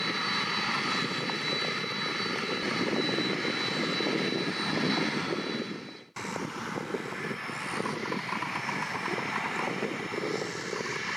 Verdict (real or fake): real